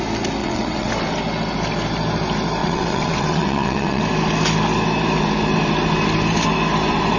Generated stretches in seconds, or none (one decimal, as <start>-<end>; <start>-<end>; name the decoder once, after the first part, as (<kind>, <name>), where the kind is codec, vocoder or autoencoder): 0.4-0.9 (vocoder, WaveNeXt); 2.6-4.0